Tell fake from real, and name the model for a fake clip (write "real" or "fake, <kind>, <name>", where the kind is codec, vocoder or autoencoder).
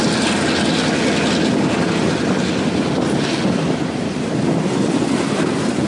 real